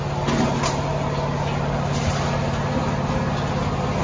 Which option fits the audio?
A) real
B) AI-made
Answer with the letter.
A